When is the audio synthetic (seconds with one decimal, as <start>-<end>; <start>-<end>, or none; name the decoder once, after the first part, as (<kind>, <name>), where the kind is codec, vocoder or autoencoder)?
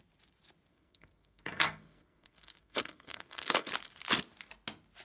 0.7-3.7 (codec, SNAC)